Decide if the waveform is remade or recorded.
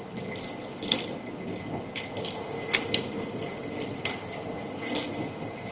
recorded